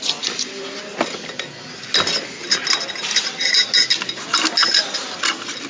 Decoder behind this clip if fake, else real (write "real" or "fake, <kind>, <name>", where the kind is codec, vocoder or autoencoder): real